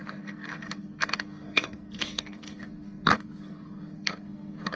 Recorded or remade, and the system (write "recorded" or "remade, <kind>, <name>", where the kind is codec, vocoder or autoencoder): remade, codec, SNAC